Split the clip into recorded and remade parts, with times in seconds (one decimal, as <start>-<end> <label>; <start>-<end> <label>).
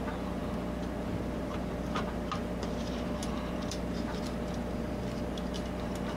0.0-0.4 remade; 0.4-1.1 recorded; 1.1-6.2 remade